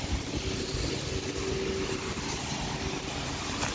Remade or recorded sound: recorded